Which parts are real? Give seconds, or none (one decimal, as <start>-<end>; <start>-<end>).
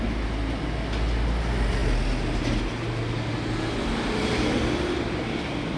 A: 0.0-5.8